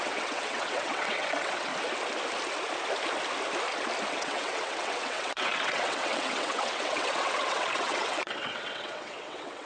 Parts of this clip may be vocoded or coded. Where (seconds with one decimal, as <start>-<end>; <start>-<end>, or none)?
0.0-1.7; 4.1-9.7

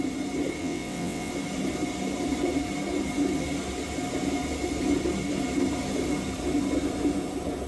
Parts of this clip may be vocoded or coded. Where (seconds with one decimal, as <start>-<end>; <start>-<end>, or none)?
0.6-1.3